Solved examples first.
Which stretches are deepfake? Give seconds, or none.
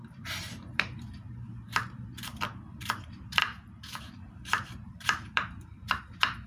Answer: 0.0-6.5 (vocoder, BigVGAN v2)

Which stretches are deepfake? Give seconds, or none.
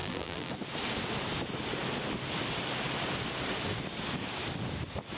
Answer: 0.0-0.5 (vocoder, BigVGAN v2)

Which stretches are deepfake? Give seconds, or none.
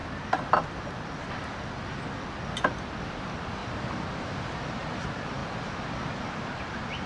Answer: 0.0-1.3 (vocoder, BigVGAN v2); 3.6-4.3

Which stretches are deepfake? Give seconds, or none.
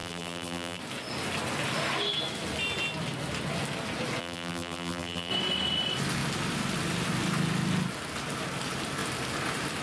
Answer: 0.0-0.8 (vocoder, BigVGAN v2); 4.2-5.3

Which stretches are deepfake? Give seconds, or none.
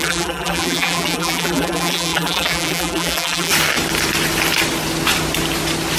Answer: 0.0-3.5 (vocoder, BigVGAN v2)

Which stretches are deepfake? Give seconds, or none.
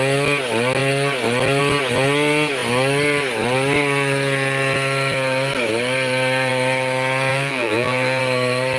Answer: 7.3-8.2 (vocoder, BigVGAN v2)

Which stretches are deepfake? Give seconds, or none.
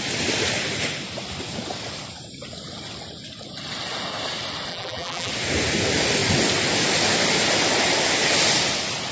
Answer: 4.7-5.3 (vocoder, BigVGAN v2)